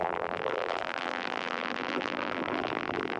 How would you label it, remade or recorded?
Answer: remade